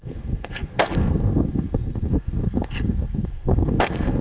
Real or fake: fake